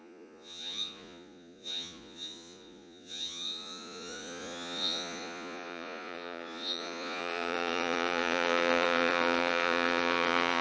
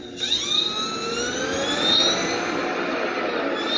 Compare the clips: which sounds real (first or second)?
second